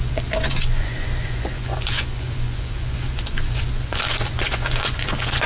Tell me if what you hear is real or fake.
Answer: fake